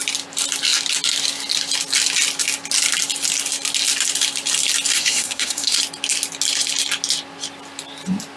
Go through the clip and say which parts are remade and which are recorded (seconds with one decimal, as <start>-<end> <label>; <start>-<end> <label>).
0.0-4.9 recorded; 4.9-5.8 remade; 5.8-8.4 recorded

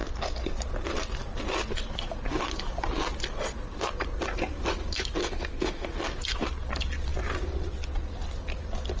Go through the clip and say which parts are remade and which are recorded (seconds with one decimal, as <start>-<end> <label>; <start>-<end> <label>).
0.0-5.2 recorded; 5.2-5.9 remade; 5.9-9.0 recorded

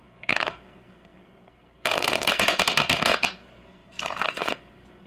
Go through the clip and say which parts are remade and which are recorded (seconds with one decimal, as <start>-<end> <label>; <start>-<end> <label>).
0.0-5.1 remade

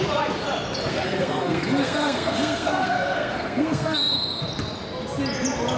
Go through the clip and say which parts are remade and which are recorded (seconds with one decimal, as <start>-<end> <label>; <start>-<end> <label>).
0.0-0.9 recorded; 0.9-4.4 remade; 4.4-5.8 recorded

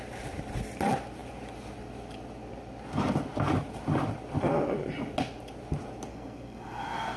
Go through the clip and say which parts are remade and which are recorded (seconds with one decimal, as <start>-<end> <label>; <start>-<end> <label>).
0.0-6.1 recorded; 6.1-7.2 remade

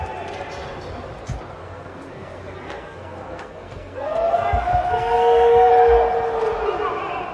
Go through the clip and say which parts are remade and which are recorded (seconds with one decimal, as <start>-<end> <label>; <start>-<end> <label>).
0.0-1.6 recorded; 1.6-5.7 remade; 5.7-7.3 recorded

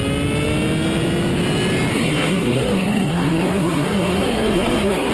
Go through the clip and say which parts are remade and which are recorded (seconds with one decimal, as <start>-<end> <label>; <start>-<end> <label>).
0.0-1.9 recorded; 1.9-5.1 remade

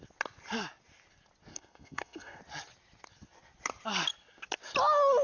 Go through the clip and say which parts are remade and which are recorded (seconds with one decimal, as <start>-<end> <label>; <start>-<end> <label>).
0.0-1.5 recorded; 1.5-2.4 remade; 2.4-5.2 recorded